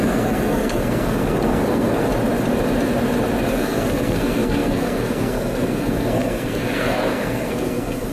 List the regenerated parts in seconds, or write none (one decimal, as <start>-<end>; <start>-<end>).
0.0-2.1; 3.5-8.1